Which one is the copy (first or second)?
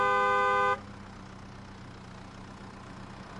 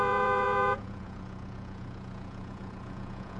second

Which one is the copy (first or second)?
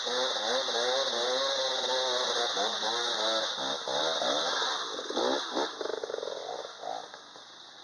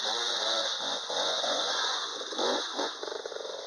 second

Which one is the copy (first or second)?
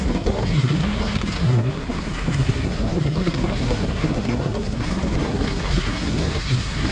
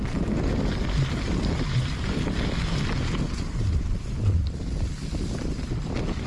first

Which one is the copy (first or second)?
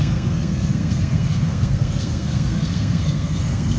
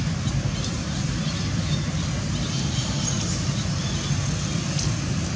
first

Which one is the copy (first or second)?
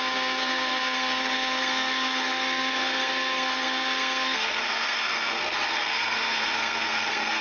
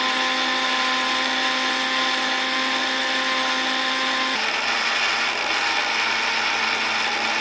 first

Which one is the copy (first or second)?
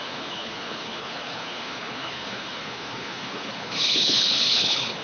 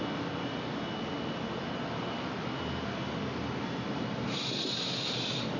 first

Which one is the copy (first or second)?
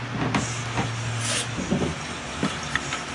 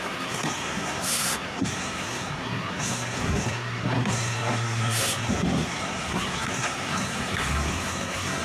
second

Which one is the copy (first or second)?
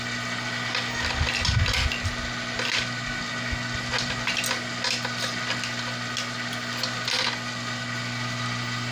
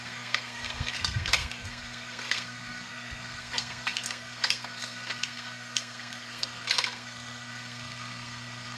second